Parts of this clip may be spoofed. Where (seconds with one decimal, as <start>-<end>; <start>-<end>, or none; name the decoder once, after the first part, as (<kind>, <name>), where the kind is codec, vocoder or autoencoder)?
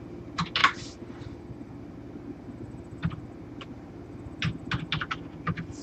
none